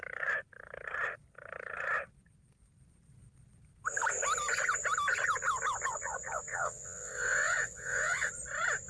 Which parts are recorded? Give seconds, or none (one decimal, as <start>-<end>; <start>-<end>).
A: 0.0-6.5; 8.3-8.9